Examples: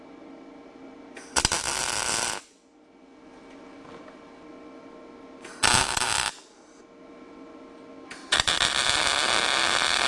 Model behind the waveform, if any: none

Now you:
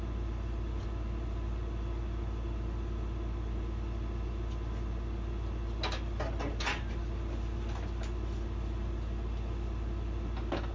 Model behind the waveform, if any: none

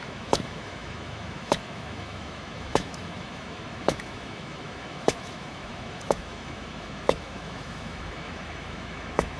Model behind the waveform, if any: autoencoder, DAC-VAE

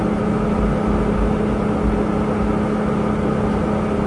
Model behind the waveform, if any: none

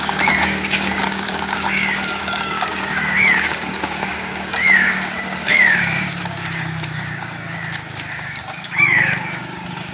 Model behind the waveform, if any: codec, DAC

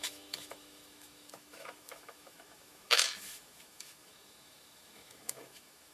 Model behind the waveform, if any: autoencoder, DAC-VAE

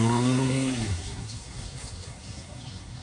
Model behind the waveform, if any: codec, SNAC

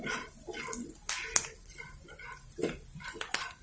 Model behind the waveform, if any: none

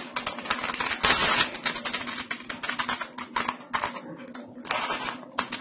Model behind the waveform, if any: none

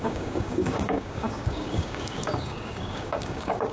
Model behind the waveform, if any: codec, DAC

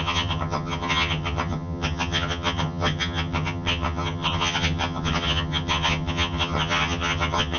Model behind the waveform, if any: vocoder, HiFi-GAN